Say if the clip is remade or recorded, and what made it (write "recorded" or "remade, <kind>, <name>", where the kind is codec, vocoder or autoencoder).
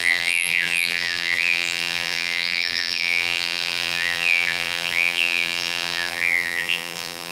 remade, vocoder, BigVGAN v2